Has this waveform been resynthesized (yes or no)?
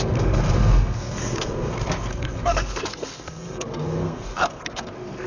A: yes